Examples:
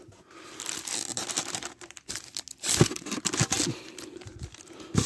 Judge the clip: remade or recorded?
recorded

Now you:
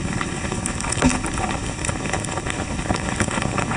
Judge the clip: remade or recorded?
remade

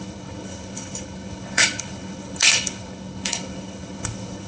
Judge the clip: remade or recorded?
remade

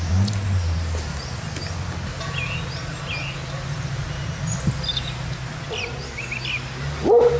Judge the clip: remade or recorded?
recorded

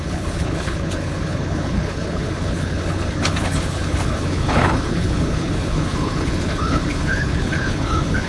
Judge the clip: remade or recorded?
remade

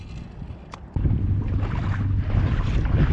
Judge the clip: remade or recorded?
recorded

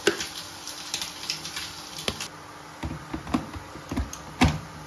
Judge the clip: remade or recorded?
recorded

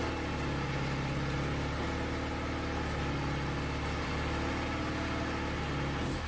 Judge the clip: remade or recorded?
recorded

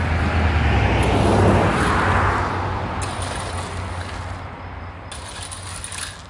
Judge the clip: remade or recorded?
recorded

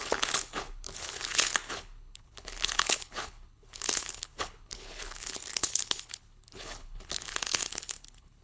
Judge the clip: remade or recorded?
remade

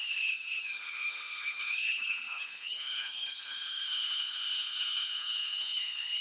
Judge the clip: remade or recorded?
remade